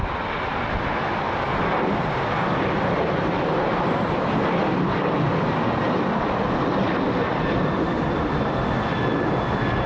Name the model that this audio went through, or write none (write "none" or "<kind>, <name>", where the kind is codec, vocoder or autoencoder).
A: none